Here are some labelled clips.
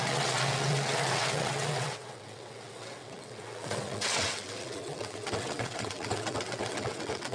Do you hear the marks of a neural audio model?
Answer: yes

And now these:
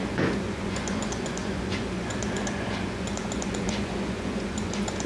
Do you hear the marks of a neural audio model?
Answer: yes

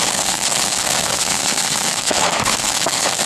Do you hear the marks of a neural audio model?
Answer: yes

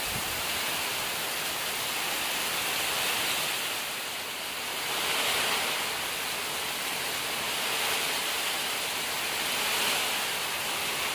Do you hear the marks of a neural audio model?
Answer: no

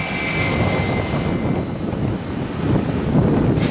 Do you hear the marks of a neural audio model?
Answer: no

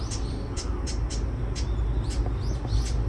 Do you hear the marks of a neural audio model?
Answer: no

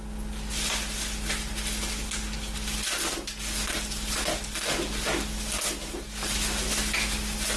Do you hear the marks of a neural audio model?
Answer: no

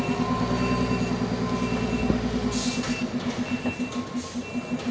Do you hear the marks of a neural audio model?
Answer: no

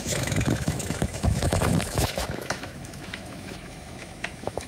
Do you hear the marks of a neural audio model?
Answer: yes